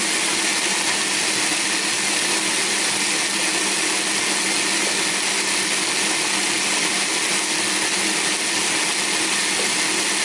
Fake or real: real